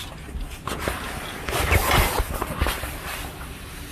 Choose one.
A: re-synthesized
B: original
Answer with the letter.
B